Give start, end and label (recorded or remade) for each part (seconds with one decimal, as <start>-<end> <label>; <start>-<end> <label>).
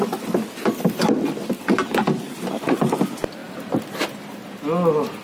0.0-2.0 recorded; 2.0-3.0 remade; 3.0-3.4 recorded; 3.4-4.0 remade; 4.0-5.2 recorded